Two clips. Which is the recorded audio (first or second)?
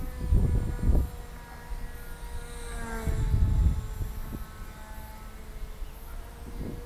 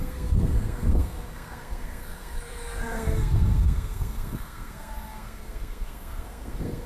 first